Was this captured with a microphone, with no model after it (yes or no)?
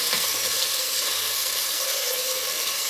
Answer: no